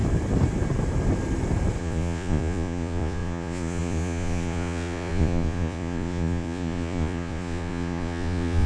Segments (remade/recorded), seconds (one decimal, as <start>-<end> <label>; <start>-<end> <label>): 0.0-1.8 recorded; 1.8-8.7 remade